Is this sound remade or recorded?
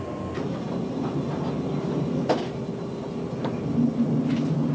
recorded